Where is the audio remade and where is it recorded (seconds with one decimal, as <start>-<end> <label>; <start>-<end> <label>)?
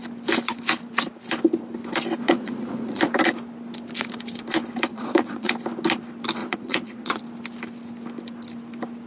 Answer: 0.0-2.2 recorded; 2.2-3.0 remade; 3.0-4.9 recorded; 4.9-5.5 remade; 5.5-6.4 recorded; 6.4-7.2 remade; 7.2-9.1 recorded